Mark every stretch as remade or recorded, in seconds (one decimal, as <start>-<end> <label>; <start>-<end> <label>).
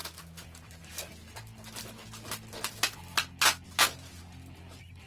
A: 0.0-5.1 recorded